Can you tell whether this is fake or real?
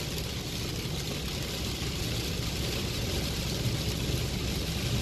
real